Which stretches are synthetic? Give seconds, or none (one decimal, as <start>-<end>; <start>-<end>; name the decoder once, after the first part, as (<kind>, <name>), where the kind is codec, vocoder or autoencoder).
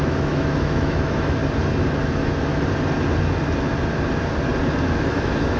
0.0-1.4 (autoencoder, DAC-VAE); 2.0-2.5; 4.7-5.6